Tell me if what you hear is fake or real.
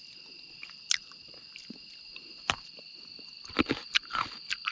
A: fake